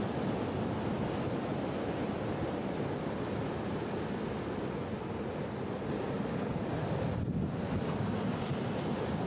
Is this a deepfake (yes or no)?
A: no